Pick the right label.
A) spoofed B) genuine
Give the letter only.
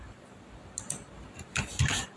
B